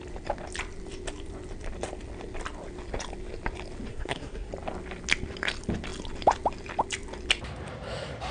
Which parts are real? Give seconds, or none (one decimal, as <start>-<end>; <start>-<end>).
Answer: 0.0-3.9; 4.5-8.3